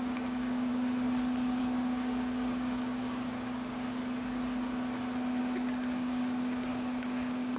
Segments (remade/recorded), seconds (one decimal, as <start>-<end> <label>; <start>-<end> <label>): 0.0-0.7 remade; 0.7-1.6 recorded; 1.6-4.0 remade; 4.0-5.4 recorded; 5.4-7.6 remade